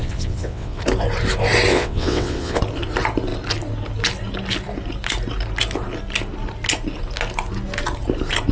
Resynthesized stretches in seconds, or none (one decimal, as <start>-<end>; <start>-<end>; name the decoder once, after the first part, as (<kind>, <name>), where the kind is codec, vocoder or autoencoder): 0.0-0.8 (vocoder, WaveNeXt); 1.7-2.6